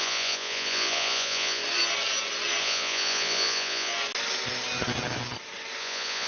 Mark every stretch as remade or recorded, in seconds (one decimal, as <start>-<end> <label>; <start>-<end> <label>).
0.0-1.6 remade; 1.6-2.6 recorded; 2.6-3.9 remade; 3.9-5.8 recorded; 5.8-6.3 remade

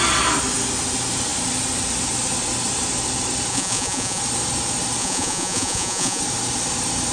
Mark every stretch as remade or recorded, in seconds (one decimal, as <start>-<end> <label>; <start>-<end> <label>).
0.0-3.5 recorded; 3.5-4.2 remade; 4.2-5.0 recorded; 5.0-6.2 remade; 6.2-7.1 recorded

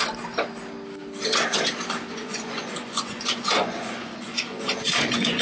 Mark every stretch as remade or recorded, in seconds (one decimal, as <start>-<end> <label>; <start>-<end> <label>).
0.0-2.1 recorded; 2.1-5.4 remade

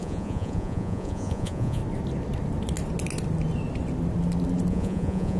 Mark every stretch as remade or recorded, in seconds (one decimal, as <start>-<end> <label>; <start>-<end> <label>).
0.0-1.8 remade; 1.8-4.7 recorded; 4.7-5.4 remade

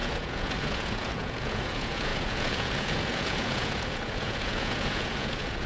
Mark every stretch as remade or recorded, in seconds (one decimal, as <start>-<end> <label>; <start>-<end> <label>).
0.0-5.7 remade

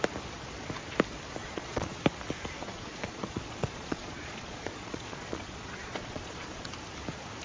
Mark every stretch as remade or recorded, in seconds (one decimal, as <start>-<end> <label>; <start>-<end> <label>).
0.0-1.4 recorded; 1.4-2.0 remade; 2.0-2.6 recorded; 2.6-6.7 remade; 6.7-7.4 recorded

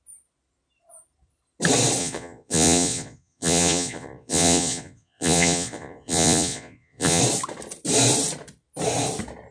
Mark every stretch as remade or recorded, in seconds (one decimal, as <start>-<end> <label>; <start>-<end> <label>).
0.0-2.0 recorded; 2.0-7.2 remade; 7.2-9.5 recorded